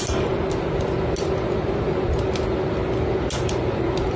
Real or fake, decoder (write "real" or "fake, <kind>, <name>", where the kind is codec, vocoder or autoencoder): real